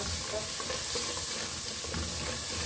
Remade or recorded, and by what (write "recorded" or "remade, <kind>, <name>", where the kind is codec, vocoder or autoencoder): recorded